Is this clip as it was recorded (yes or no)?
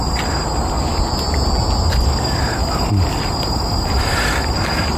yes